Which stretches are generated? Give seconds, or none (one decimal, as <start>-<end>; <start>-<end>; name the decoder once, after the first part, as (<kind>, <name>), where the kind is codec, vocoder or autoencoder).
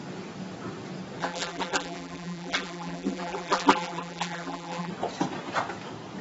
1.2-4.9 (vocoder, BigVGAN v2)